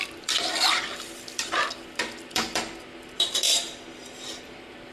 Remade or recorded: remade